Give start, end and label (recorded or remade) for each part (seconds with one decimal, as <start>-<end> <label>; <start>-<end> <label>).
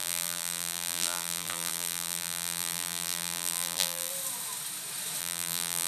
0.0-4.1 remade; 4.1-5.2 recorded; 5.2-5.9 remade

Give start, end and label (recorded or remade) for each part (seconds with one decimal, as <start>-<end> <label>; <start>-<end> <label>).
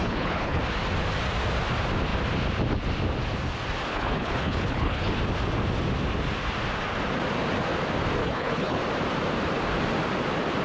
0.0-0.6 remade; 0.6-3.9 recorded; 3.9-5.2 remade; 5.2-8.2 recorded; 8.2-8.8 remade; 8.8-10.6 recorded